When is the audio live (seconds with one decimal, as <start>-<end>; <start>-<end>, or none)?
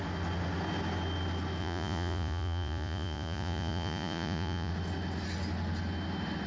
0.0-1.6; 4.7-6.5